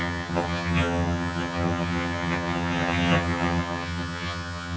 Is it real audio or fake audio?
fake